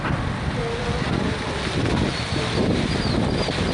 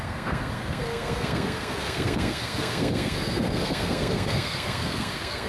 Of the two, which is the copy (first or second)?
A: second